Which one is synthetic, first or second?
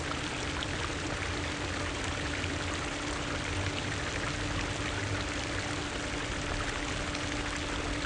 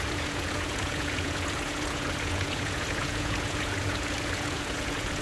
second